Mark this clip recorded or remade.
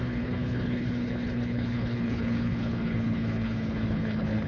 remade